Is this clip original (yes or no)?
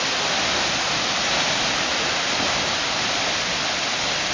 yes